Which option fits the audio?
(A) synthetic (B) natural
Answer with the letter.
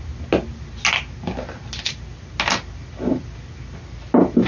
B